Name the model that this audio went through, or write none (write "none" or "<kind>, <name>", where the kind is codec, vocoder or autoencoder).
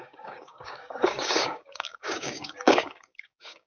codec, DAC